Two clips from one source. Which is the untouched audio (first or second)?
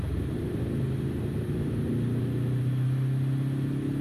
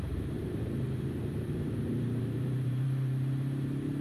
first